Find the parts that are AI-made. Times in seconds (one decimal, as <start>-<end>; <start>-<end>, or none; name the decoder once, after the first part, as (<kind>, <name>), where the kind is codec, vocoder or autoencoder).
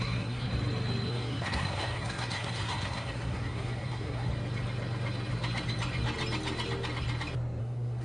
0.0-0.5 (codec, SNAC); 1.1-4.3; 7.6-8.0